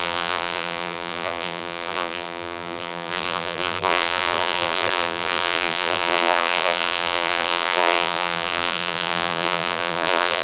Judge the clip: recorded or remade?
remade